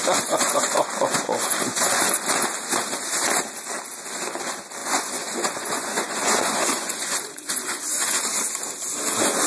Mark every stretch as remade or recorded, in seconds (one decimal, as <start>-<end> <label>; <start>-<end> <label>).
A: 0.0-2.0 remade; 2.0-4.8 recorded; 4.8-8.2 remade; 8.2-9.5 recorded

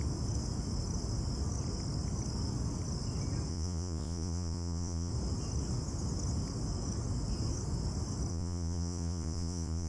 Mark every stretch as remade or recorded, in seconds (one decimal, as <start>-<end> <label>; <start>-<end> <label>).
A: 0.0-3.5 recorded; 3.5-5.1 remade; 5.1-8.3 recorded; 8.3-9.9 remade

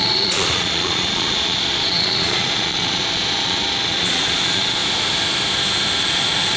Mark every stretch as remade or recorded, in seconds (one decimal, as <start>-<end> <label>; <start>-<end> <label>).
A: 0.0-4.8 remade; 4.8-6.0 recorded; 6.0-6.6 remade

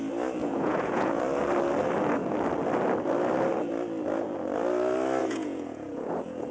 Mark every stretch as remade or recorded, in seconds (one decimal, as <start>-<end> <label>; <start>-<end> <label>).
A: 0.0-0.4 recorded; 0.4-1.2 remade; 1.2-5.2 recorded; 5.2-6.5 remade

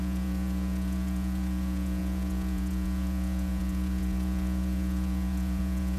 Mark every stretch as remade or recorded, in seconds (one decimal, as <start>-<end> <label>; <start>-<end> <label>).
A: 0.0-6.0 remade

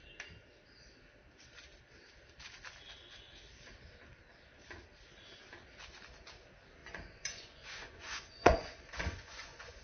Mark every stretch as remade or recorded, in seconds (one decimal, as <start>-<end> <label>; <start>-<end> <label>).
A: 0.0-6.8 recorded; 6.8-9.8 remade

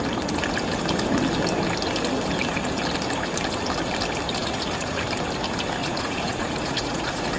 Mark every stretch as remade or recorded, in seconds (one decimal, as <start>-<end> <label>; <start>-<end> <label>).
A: 0.0-4.4 recorded; 4.4-5.0 remade; 5.0-5.8 recorded; 5.8-7.4 remade